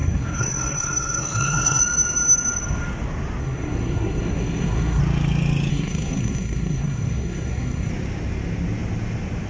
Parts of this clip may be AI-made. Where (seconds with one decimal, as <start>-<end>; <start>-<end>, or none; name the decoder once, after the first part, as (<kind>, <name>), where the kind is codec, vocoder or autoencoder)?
0.0-1.8 (codec, SNAC); 3.4-5.0; 5.7-7.9